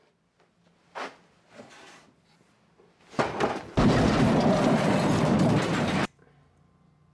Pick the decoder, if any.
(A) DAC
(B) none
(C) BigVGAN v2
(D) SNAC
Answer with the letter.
B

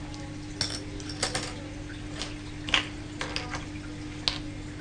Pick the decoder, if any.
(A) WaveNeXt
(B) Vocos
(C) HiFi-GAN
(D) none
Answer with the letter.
D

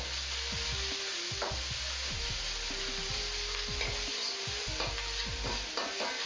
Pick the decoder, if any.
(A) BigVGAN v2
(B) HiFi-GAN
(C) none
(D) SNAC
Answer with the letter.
C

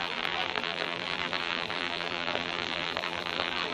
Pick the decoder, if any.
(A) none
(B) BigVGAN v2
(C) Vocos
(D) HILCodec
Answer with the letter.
B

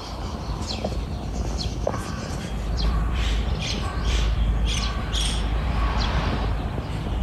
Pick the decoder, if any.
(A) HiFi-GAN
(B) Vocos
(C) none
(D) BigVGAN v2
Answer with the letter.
D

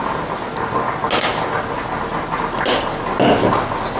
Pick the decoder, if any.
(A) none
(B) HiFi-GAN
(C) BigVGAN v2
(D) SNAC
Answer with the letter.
A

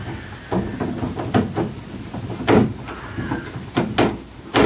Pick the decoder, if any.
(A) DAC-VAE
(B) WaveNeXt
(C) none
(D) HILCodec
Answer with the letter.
C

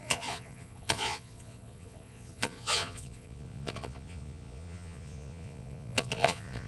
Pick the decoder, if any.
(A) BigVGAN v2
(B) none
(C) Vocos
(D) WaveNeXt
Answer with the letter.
C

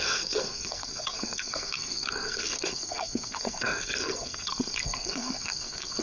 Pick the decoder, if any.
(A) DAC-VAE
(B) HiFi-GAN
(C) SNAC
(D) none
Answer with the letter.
C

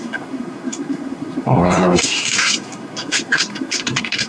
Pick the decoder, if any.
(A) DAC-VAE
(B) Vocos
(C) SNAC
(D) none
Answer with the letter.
C